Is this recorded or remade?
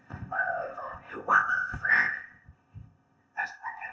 remade